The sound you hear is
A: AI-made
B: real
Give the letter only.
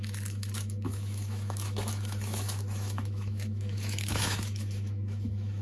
A